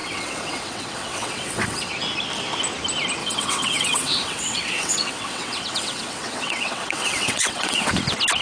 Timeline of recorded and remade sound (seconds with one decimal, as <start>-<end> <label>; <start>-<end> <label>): 0.0-1.9 remade; 1.9-3.2 recorded; 3.2-7.9 remade; 7.9-8.4 recorded